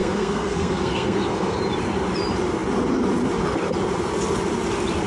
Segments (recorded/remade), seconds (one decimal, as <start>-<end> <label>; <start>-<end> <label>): 0.0-1.6 remade; 1.6-5.1 recorded